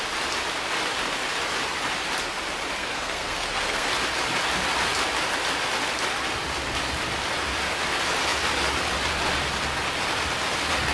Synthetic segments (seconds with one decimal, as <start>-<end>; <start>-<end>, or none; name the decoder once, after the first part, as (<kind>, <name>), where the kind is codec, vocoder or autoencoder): 2.8-3.9 (codec, SNAC)